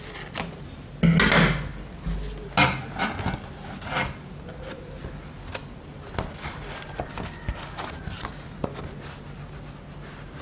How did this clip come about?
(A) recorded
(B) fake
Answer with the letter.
A